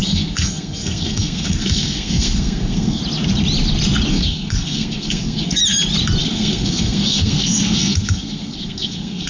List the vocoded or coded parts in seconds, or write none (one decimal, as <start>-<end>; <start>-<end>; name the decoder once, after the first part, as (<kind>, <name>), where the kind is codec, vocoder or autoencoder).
0.0-3.0 (codec, SNAC); 4.1-5.6; 6.2-9.3